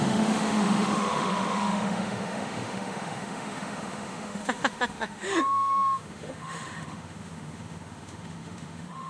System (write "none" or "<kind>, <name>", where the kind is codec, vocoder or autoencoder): autoencoder, DAC-VAE